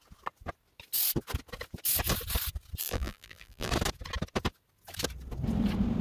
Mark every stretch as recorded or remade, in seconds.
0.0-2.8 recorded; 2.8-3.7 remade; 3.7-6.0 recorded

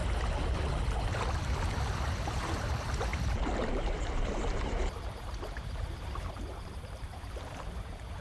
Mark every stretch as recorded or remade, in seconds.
0.0-1.6 recorded; 1.6-3.1 remade; 3.1-4.2 recorded; 4.2-8.2 remade

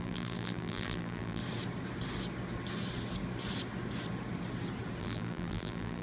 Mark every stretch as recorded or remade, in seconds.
0.0-1.4 remade; 1.4-5.0 recorded; 5.0-6.0 remade

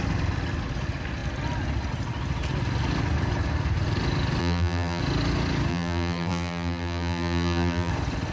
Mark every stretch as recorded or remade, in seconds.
0.0-4.4 recorded; 4.4-5.0 remade; 5.0-5.7 recorded; 5.7-7.9 remade; 7.9-8.3 recorded

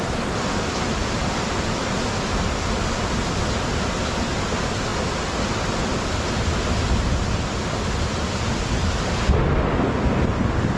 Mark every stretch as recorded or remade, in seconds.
0.0-8.8 recorded; 8.8-9.4 remade; 9.4-10.8 recorded

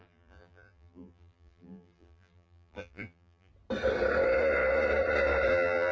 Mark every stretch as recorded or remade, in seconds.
0.0-3.5 remade; 3.5-5.5 recorded; 5.5-5.9 remade

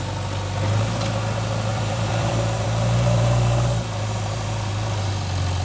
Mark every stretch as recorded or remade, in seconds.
0.0-1.7 recorded; 1.7-5.1 remade; 5.1-5.6 recorded

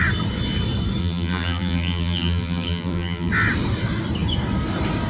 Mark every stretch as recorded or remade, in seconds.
0.0-1.0 recorded; 1.0-3.3 remade; 3.3-5.1 recorded